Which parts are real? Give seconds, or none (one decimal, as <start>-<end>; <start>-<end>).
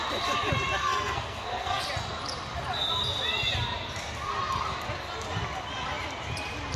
0.0-0.8; 1.8-6.8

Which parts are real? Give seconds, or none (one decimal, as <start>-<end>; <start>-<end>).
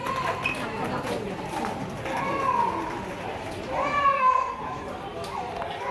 0.0-4.1; 4.6-5.9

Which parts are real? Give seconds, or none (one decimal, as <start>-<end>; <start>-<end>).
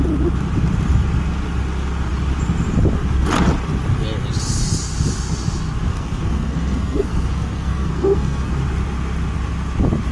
0.0-5.9; 8.5-10.1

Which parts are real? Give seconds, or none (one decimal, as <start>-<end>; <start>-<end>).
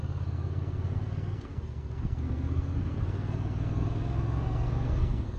none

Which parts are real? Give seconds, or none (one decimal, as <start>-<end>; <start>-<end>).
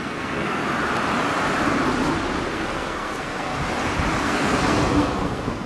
0.6-2.5; 3.5-4.2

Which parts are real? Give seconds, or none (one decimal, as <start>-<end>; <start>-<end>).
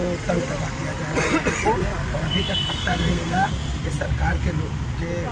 0.0-2.7; 3.5-5.3